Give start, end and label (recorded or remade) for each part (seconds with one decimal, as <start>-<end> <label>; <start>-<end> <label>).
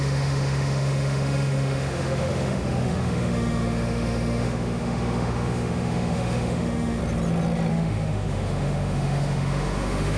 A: 0.0-7.0 remade; 7.0-7.7 recorded; 7.7-10.2 remade